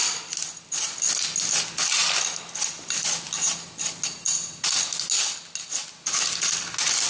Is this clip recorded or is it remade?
recorded